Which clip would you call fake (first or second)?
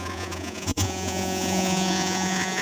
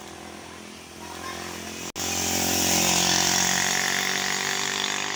first